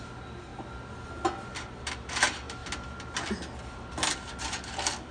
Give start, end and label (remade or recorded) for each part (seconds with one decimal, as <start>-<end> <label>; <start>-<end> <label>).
0.0-5.1 recorded